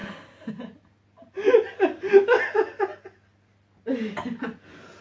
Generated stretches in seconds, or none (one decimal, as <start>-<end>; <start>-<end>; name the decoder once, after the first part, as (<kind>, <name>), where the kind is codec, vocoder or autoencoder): none